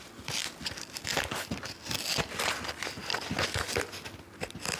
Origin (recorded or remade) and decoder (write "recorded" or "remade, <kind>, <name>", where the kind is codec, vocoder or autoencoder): recorded